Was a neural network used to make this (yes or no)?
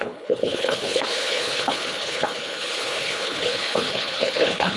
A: yes